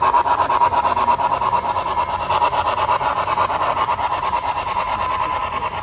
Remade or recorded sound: recorded